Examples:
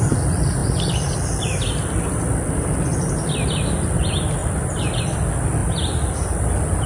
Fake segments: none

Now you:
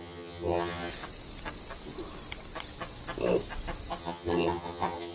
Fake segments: 0.0-0.9 (vocoder, HiFi-GAN); 4.0-5.1

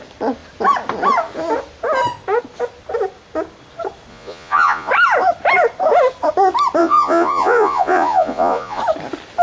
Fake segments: 4.1-4.9 (vocoder, Vocos); 6.8-8.8

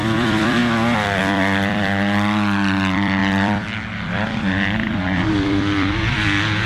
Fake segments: 0.0-6.7 (vocoder, BigVGAN v2)

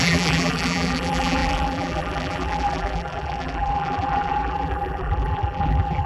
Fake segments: 0.0-6.1 (vocoder, BigVGAN v2)

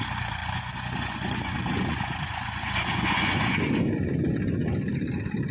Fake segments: 0.4-3.7 (vocoder, Vocos)